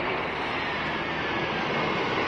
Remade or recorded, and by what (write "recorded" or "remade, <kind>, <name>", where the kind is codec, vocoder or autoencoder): recorded